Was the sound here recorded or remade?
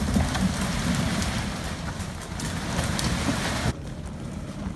recorded